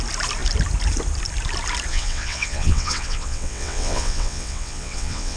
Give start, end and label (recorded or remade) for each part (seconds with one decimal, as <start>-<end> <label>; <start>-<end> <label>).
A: 0.0-1.9 recorded; 1.9-5.4 remade